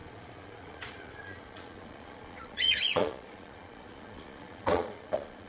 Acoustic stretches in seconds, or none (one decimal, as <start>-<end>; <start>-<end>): none